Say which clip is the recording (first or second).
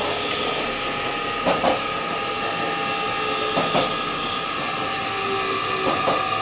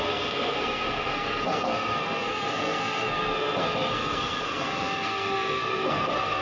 first